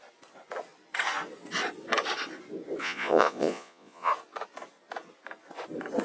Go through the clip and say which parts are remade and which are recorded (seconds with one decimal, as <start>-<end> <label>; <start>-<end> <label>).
0.0-2.8 recorded; 2.8-4.1 remade; 4.1-6.0 recorded